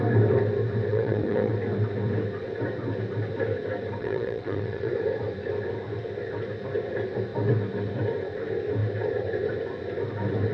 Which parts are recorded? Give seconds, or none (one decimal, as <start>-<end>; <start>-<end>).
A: 0.0-0.9; 1.5-4.0; 4.9-10.5